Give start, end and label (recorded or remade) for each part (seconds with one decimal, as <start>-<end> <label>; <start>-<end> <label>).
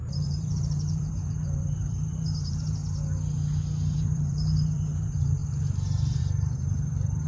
0.0-2.8 remade; 2.8-3.9 recorded; 3.9-5.4 remade; 5.4-6.2 recorded; 6.2-7.3 remade